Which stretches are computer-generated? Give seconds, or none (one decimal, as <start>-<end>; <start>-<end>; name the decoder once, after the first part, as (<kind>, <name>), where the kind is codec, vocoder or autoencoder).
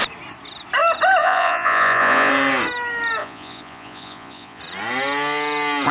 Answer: 1.2-2.3 (vocoder, Vocos); 3.2-4.6